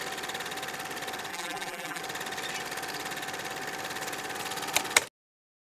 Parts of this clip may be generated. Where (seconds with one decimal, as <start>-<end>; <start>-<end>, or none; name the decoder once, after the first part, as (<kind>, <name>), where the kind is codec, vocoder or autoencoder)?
1.3-2.0 (vocoder, BigVGAN v2)